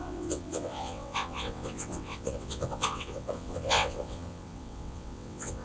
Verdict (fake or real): fake